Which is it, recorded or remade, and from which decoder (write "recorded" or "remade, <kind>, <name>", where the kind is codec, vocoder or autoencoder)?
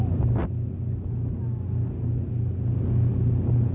recorded